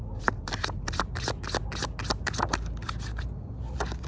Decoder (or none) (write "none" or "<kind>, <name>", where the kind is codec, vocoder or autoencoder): none